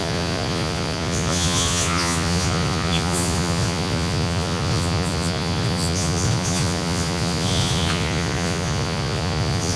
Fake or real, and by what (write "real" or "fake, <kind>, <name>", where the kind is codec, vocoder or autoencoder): fake, vocoder, Vocos